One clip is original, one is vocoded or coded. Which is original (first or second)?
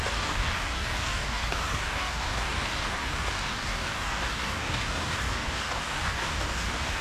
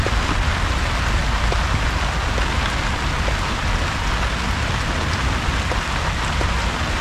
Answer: second